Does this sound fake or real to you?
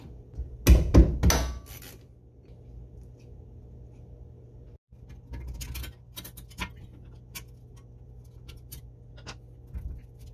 real